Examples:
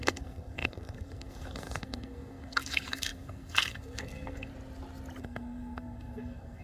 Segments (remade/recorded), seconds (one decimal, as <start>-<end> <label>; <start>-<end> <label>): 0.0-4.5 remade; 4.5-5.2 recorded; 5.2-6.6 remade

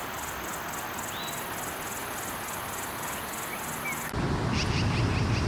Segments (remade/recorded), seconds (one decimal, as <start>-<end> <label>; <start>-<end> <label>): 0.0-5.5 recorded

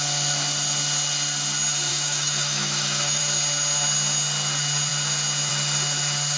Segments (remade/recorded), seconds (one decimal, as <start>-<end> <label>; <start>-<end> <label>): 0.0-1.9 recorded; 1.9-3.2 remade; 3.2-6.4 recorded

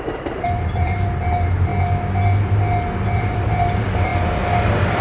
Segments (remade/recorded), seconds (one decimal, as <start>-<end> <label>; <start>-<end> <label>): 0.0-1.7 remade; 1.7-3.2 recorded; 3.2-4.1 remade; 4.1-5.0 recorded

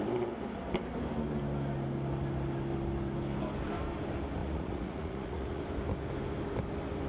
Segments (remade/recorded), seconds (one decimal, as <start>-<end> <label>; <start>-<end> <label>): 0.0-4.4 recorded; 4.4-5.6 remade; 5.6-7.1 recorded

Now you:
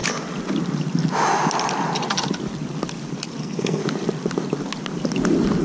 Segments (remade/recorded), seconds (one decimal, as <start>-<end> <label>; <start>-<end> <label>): 0.0-3.4 recorded; 3.4-3.8 remade; 3.8-5.6 recorded

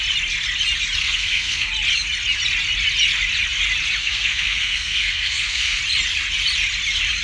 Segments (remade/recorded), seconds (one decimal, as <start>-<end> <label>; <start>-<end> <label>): 0.0-1.0 recorded; 1.0-1.7 remade; 1.7-4.0 recorded; 4.0-5.8 remade; 5.8-7.2 recorded

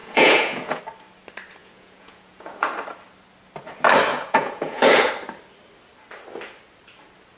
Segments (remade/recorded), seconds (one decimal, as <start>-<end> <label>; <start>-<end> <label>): 0.0-0.8 remade; 0.8-1.6 recorded; 1.6-2.7 remade; 2.7-4.1 recorded; 4.1-5.1 remade; 5.1-7.4 recorded